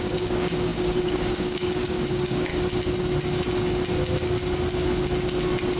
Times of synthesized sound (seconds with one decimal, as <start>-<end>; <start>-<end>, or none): 0.0-2.5